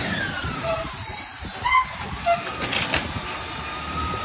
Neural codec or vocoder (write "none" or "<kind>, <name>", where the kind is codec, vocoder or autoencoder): vocoder, BigVGAN v2